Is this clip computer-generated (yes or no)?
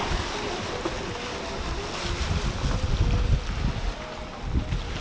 no